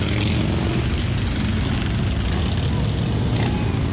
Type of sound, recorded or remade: recorded